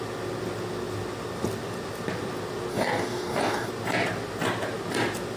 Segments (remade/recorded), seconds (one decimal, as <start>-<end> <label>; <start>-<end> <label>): 0.0-2.7 recorded; 2.7-3.7 remade; 3.7-5.4 recorded